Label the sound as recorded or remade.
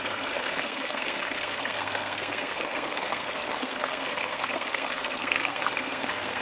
remade